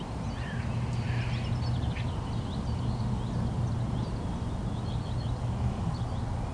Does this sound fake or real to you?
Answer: real